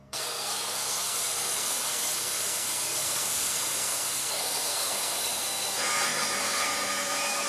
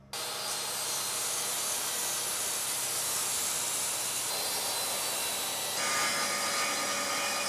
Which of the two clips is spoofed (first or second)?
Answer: first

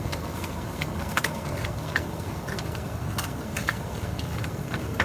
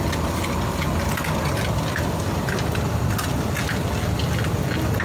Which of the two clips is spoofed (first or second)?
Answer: first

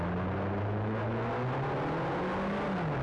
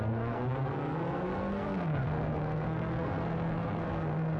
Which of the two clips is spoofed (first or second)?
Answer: second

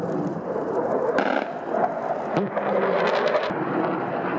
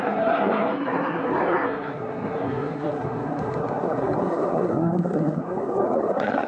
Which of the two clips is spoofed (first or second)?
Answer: second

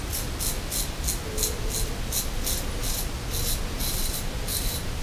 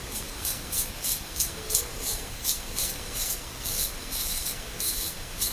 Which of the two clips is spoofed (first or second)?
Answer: second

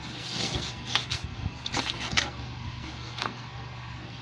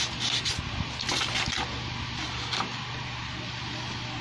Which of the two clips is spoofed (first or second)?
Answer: first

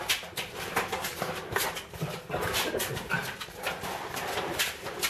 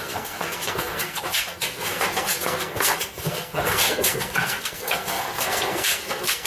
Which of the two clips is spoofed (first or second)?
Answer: second